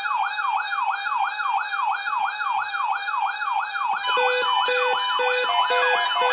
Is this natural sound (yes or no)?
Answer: yes